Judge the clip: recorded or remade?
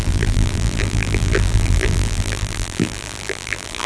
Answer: remade